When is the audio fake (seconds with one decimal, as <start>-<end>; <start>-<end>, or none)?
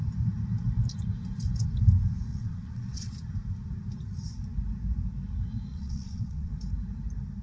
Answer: 2.3-3.1; 5.7-6.5